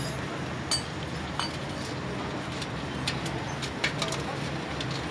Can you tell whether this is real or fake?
real